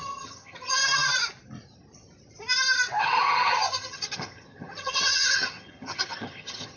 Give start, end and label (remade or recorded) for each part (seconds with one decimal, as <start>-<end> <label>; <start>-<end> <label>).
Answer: 0.0-0.8 remade; 0.8-3.0 recorded; 3.0-6.8 remade